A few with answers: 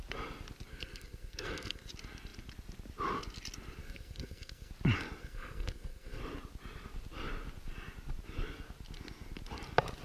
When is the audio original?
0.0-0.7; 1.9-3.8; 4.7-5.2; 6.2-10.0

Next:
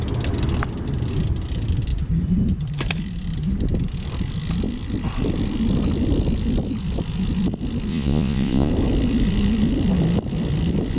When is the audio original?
0.0-7.9; 8.7-11.0

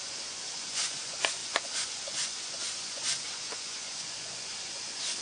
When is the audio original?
none

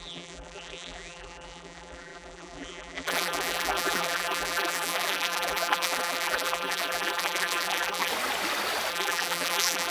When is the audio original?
8.1-8.9

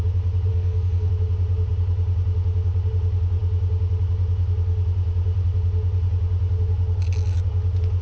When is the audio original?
0.0-0.5; 1.1-8.0

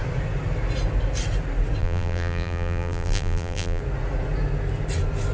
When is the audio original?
0.0-1.8; 3.8-5.3

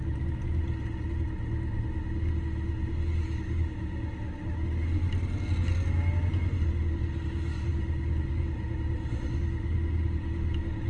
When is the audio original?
0.0-10.9

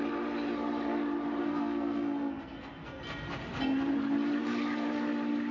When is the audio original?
0.0-1.4; 3.0-5.5